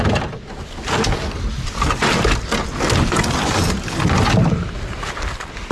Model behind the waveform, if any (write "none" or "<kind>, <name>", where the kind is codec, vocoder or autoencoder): none